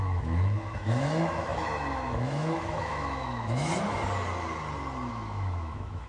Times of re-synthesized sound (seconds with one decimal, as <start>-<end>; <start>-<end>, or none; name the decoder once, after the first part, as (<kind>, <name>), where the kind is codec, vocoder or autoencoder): 0.0-3.7 (autoencoder, DAC-VAE); 5.1-6.1